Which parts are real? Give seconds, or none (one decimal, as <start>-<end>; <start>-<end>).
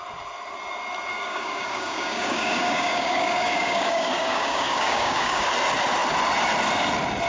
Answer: 0.0-1.1; 5.5-7.3